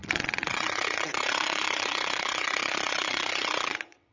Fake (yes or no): yes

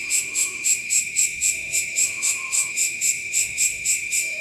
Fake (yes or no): yes